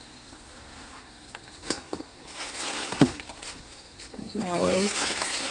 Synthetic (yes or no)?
yes